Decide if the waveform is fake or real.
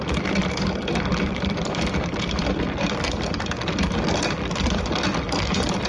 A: fake